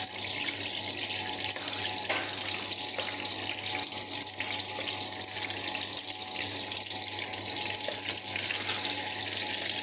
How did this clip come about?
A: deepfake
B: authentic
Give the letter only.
B